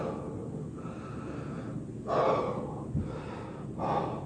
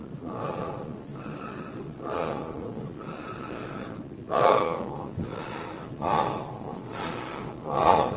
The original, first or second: first